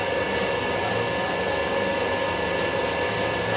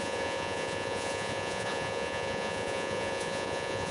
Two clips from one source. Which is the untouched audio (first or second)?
first